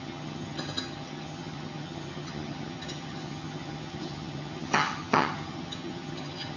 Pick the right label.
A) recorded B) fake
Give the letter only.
B